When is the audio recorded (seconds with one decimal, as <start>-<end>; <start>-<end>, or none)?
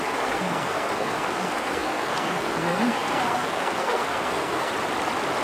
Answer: 4.7-5.4